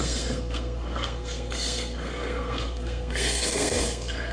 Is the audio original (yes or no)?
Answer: no